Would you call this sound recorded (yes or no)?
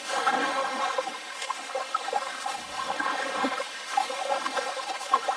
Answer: no